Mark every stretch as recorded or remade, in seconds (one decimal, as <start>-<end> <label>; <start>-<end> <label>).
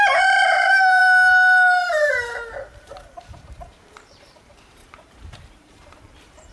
0.0-6.5 remade